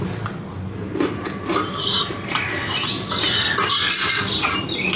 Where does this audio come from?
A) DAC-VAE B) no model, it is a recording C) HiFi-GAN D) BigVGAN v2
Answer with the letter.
B